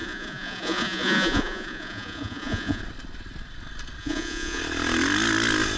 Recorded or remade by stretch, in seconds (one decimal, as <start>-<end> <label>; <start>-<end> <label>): 0.0-2.8 remade; 2.8-4.0 recorded; 4.0-4.6 remade; 4.6-5.8 recorded